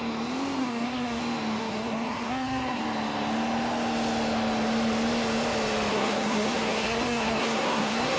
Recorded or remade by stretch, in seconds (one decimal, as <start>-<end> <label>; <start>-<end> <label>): 0.0-0.6 recorded; 0.6-1.2 remade; 1.2-1.6 recorded; 1.6-2.8 remade; 2.8-5.9 recorded; 5.9-8.2 remade